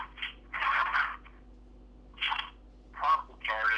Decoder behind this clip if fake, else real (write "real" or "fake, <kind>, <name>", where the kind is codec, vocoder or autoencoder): real